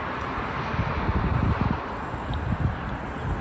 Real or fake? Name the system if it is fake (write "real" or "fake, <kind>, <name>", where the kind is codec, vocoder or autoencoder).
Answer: real